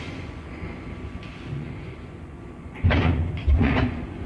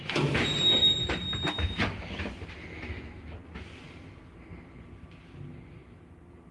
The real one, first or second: second